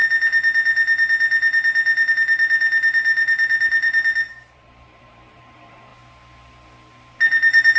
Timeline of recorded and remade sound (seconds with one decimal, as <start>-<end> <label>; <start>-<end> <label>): 0.0-2.1 recorded; 2.1-5.9 remade; 5.9-7.8 recorded